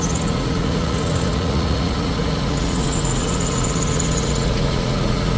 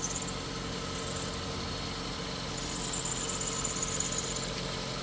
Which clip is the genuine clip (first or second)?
second